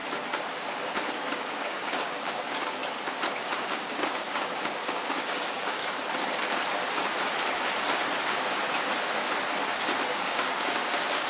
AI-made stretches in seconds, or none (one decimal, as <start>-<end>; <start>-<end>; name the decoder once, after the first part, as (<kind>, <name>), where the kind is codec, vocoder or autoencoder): 1.3-2.8 (codec, DAC); 3.4-5.8; 10.1-11.3